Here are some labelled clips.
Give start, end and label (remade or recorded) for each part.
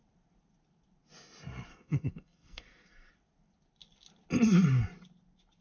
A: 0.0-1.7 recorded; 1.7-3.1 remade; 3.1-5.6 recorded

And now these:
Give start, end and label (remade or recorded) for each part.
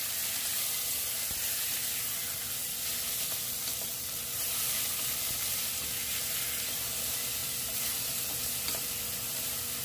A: 0.0-7.4 recorded; 7.4-8.1 remade; 8.1-9.8 recorded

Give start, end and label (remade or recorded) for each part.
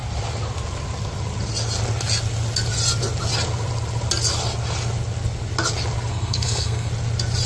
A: 0.0-6.1 recorded; 6.1-6.9 remade; 6.9-7.5 recorded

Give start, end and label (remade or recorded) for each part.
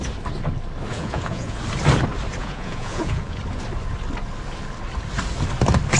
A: 0.0-0.9 recorded; 0.9-1.6 remade; 1.6-2.4 recorded; 2.4-3.4 remade; 3.4-6.0 recorded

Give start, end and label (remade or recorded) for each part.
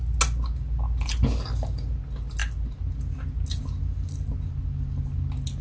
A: 0.0-5.6 recorded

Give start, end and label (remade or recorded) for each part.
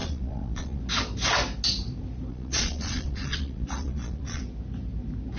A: 0.0-0.8 remade; 0.8-2.3 recorded; 2.3-4.4 remade; 4.4-5.4 recorded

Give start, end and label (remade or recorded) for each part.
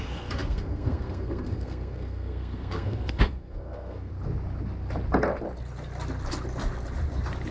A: 0.0-4.1 remade; 4.1-7.5 recorded